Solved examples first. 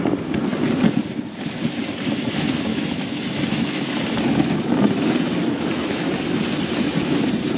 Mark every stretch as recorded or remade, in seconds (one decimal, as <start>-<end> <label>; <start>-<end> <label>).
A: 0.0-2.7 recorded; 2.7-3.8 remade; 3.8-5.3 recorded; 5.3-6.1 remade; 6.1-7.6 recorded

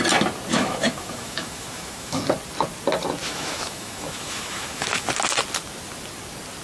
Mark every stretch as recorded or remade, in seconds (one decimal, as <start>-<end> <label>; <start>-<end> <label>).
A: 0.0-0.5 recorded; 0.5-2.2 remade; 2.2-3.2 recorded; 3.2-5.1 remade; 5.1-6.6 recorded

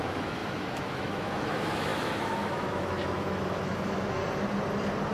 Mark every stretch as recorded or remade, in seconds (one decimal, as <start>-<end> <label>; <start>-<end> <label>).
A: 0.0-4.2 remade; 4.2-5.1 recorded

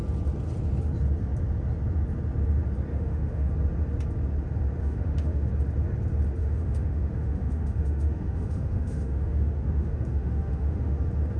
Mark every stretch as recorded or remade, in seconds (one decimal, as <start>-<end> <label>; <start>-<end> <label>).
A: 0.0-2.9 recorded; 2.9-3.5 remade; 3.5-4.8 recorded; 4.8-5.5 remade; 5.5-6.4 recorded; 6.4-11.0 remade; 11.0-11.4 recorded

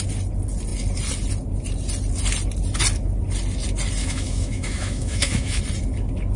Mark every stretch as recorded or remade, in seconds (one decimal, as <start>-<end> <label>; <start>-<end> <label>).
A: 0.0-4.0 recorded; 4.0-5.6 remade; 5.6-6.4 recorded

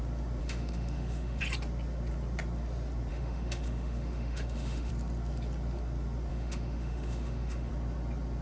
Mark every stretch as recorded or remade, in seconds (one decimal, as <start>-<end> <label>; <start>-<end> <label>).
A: 0.0-0.4 recorded; 0.4-1.4 remade; 1.4-3.1 recorded; 3.1-4.9 remade; 4.9-6.3 recorded; 6.3-7.7 remade; 7.7-8.4 recorded